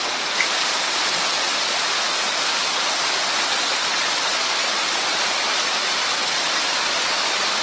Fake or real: real